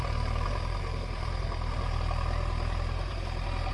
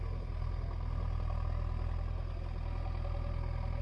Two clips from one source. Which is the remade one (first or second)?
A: first